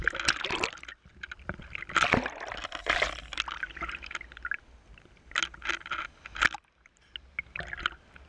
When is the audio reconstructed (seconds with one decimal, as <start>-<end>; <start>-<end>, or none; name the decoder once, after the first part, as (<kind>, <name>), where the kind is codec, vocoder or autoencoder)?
none